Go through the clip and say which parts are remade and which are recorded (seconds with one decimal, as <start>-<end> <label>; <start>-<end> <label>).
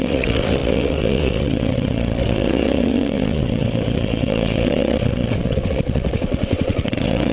0.0-7.3 remade